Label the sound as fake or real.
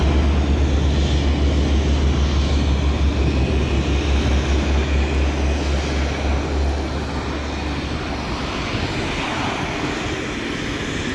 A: real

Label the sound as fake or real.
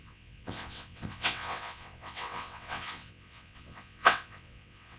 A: fake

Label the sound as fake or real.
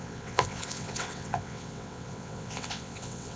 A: fake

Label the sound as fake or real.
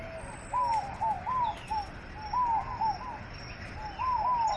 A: real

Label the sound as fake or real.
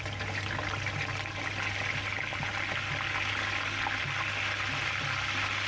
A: real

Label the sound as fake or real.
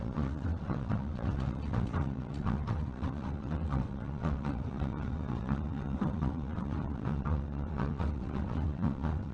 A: fake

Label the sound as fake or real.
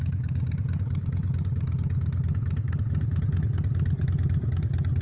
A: real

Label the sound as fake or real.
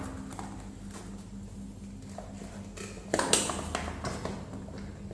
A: real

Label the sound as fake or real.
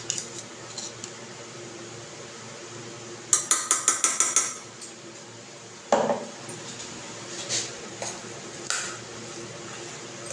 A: real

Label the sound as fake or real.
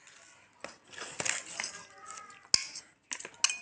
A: real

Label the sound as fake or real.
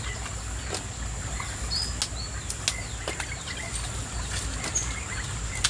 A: real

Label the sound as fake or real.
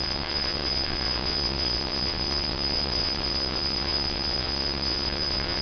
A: fake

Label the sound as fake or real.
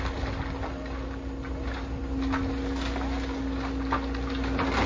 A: real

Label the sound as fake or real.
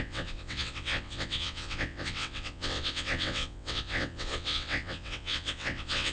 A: fake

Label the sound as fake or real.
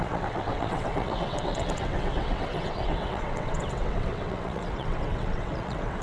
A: fake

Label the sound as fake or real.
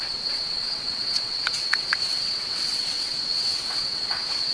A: fake